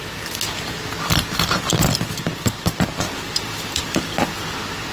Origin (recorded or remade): recorded